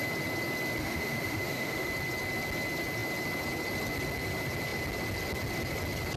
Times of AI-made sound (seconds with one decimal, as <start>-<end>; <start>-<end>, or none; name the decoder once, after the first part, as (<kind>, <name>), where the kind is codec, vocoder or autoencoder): 0.8-1.9 (autoencoder, DAC-VAE)